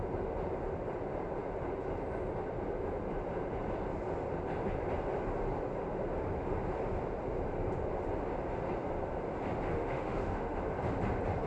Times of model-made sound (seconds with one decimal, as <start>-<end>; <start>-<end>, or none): 9.7-10.6